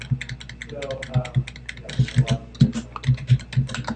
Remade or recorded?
recorded